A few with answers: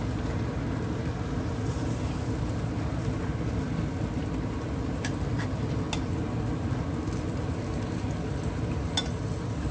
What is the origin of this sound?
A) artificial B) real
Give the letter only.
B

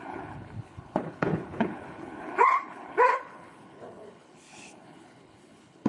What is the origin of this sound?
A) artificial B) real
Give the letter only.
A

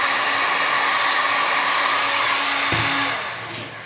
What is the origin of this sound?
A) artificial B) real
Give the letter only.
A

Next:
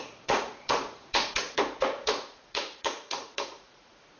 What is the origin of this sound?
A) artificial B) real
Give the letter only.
A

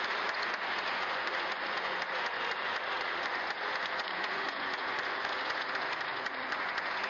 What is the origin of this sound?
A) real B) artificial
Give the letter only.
B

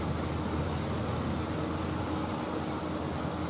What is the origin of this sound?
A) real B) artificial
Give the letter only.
A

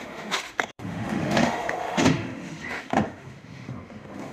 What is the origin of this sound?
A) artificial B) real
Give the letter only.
A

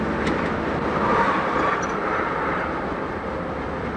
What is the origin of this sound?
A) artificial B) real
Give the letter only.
B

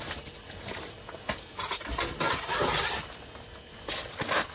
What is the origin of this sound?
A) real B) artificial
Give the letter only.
A